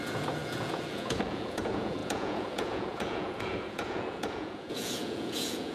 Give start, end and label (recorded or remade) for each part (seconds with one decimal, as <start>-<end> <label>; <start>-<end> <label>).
0.0-5.7 remade